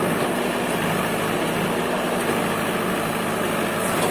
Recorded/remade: recorded